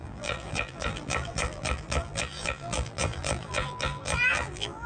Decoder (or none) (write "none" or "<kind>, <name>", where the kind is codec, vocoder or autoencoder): vocoder, BigVGAN v2